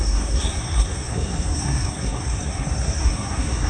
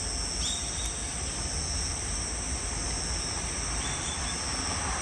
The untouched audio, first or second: second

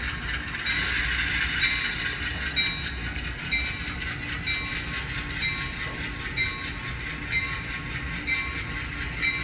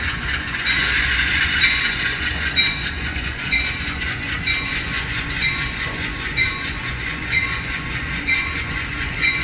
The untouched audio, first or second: first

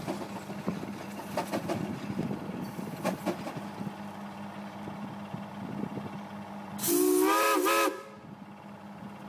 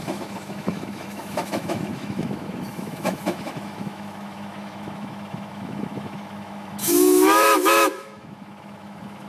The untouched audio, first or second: first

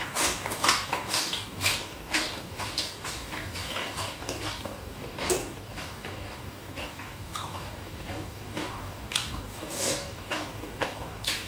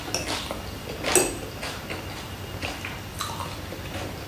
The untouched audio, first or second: second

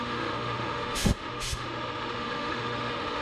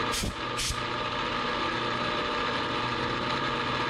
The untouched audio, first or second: second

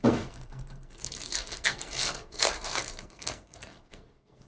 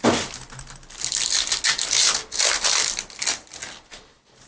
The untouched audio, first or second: second